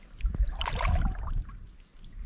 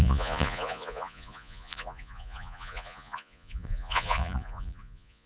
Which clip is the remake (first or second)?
second